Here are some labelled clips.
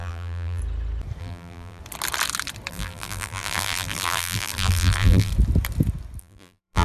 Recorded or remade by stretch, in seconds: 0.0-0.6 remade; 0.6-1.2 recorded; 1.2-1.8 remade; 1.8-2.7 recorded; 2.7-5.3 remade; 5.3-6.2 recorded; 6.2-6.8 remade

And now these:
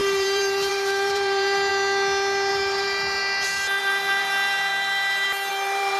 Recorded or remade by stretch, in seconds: 0.0-1.7 remade; 1.7-2.5 recorded; 2.5-3.2 remade; 3.2-3.8 recorded; 3.8-4.7 remade; 4.7-5.5 recorded; 5.5-6.0 remade

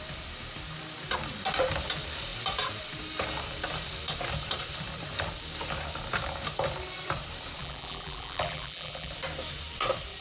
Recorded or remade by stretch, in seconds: 0.0-7.6 recorded; 7.6-9.1 remade; 9.1-10.2 recorded